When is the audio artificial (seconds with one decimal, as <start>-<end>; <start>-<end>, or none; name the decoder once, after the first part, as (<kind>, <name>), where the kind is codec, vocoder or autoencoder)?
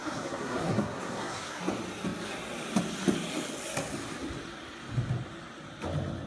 0.0-1.6 (codec, SNAC)